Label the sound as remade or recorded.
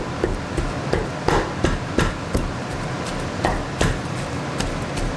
remade